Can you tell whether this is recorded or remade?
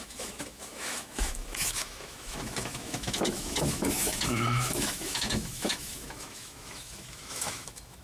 remade